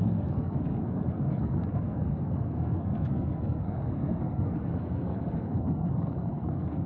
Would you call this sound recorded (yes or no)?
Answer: no